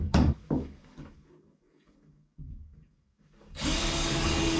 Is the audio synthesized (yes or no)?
yes